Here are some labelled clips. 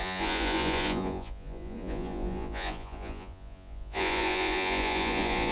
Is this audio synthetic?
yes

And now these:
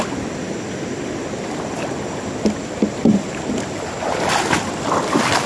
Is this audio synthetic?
no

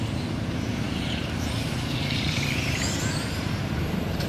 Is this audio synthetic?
yes